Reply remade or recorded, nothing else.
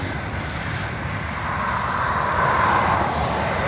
recorded